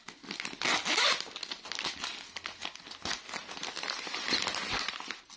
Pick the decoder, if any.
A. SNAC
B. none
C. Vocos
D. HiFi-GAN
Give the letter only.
B